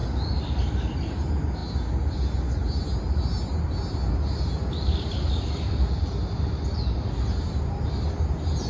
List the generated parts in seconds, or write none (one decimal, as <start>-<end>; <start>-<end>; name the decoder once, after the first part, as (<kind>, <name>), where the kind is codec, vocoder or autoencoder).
none